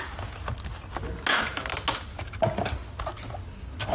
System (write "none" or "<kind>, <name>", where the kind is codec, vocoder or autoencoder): none